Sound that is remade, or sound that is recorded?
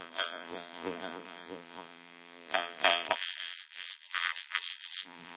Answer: remade